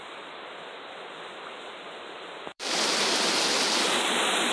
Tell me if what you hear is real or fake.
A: fake